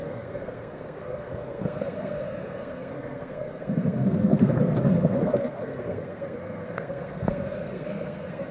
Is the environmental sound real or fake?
fake